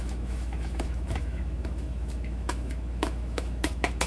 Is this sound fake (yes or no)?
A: yes